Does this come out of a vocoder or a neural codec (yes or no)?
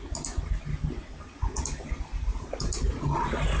no